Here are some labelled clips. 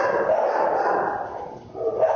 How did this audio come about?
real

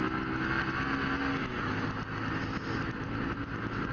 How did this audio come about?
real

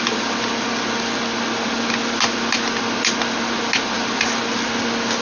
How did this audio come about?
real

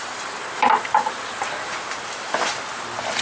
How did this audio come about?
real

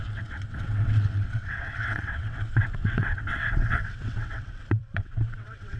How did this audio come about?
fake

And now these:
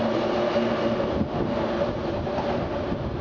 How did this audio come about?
real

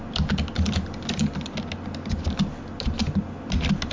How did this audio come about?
real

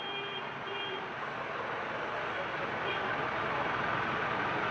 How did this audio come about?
real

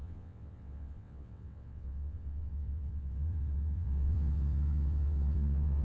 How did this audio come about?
fake